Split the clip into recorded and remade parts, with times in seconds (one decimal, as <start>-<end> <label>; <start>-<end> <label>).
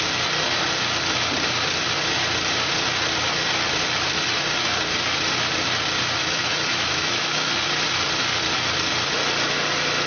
0.0-6.2 recorded; 6.2-7.5 remade; 7.5-10.1 recorded